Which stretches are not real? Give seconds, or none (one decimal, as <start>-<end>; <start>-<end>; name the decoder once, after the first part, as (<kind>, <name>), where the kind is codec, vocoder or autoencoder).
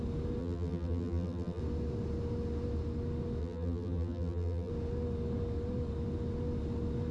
0.4-1.6 (vocoder, BigVGAN v2); 3.4-4.7